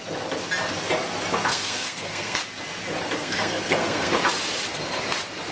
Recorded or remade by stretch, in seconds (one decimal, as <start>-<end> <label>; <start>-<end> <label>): 0.0-1.5 recorded; 1.5-2.4 remade; 2.4-3.2 recorded; 3.2-4.1 remade; 4.1-5.5 recorded